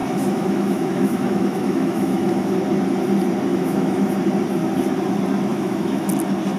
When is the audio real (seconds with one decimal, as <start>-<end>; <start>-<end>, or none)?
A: 2.5-3.5; 4.1-5.5; 6.1-6.6